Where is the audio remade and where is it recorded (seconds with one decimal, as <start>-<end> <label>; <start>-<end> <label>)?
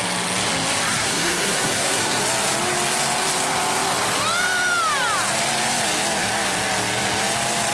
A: 0.0-0.9 recorded; 0.9-2.2 remade; 2.2-7.7 recorded